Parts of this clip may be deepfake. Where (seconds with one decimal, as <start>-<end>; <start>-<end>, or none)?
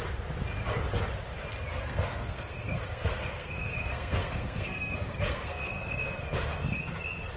1.7-5.9